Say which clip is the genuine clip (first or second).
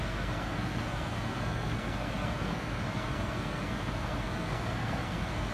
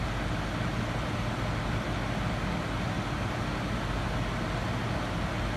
second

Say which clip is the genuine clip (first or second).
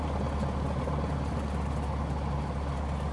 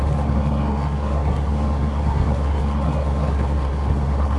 first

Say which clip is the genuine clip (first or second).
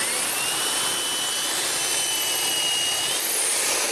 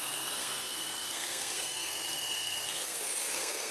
first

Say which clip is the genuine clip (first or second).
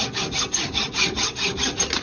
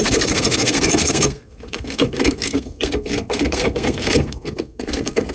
first